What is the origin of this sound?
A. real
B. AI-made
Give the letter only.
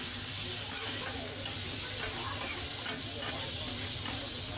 A